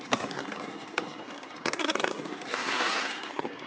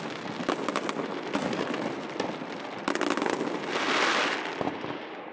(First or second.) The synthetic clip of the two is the first